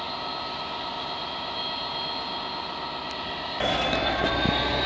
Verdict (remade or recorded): recorded